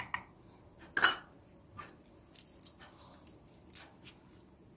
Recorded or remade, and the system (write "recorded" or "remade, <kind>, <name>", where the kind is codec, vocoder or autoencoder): recorded